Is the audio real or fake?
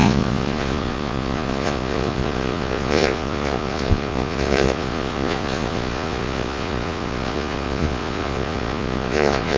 fake